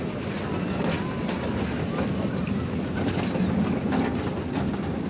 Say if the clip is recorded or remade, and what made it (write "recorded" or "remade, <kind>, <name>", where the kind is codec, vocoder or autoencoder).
recorded